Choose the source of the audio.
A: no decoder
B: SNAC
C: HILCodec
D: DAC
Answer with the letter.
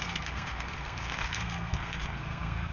B